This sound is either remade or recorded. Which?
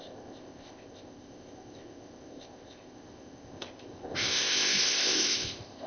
remade